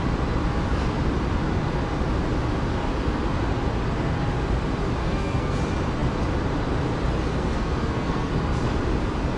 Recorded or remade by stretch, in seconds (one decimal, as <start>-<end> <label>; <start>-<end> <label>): 0.0-5.0 recorded; 5.0-5.6 remade; 5.6-7.3 recorded; 7.3-8.3 remade; 8.3-9.4 recorded